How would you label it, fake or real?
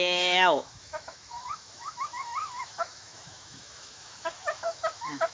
fake